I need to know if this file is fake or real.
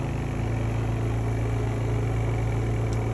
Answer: real